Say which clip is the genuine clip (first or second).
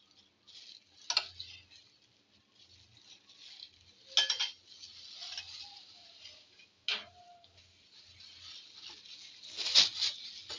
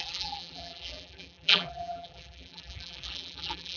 first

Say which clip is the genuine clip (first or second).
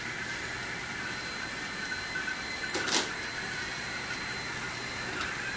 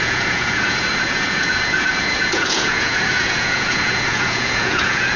first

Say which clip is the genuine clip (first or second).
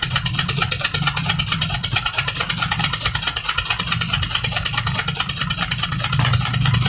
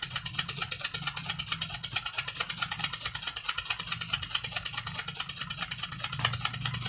second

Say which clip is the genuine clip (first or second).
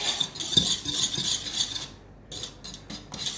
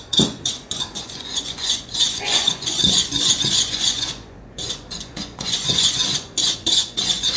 first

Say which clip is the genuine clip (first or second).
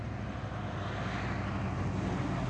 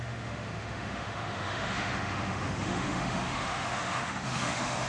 first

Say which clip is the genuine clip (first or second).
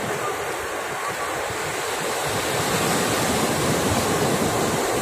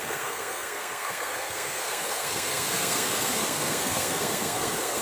first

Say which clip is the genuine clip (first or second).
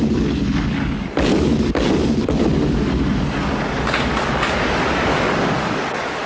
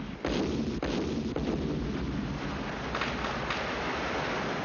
second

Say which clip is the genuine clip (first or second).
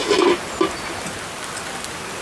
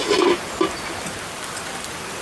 first